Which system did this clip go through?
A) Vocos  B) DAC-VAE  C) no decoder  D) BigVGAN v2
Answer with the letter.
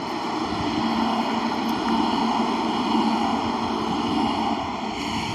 C